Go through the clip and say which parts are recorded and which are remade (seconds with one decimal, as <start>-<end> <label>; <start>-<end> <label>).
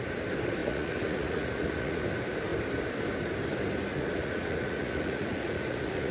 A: 0.0-0.6 recorded; 0.6-2.0 remade; 2.0-3.9 recorded; 3.9-6.1 remade